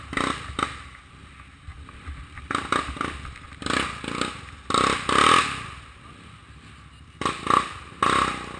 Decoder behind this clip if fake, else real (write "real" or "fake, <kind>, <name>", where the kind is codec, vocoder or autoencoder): real